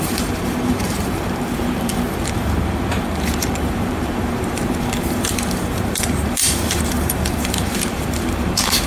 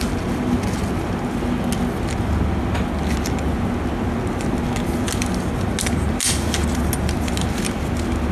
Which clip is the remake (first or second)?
first